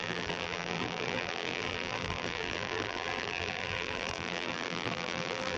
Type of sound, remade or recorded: remade